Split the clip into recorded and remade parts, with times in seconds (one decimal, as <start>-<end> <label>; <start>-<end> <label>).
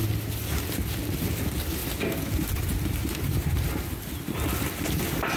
0.0-5.4 recorded